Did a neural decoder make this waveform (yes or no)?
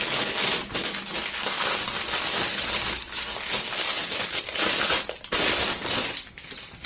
no